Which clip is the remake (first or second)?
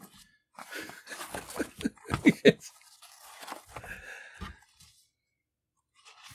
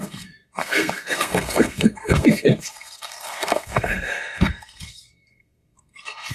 second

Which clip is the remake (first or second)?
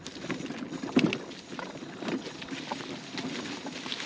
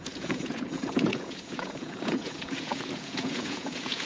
second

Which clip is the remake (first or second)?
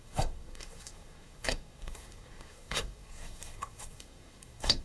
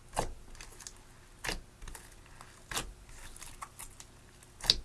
first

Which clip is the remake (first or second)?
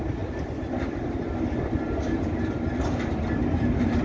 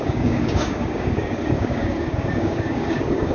second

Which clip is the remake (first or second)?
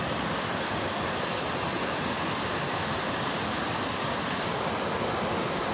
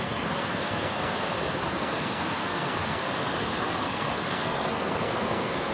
second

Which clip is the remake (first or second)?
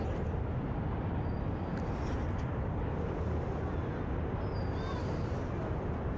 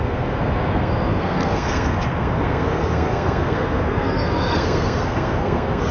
second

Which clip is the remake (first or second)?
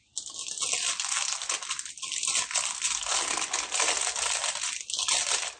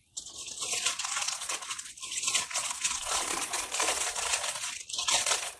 second